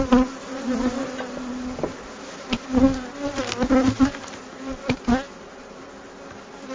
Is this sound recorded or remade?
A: recorded